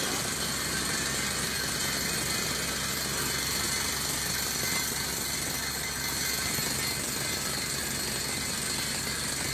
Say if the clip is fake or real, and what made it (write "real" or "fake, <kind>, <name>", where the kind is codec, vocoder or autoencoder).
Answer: real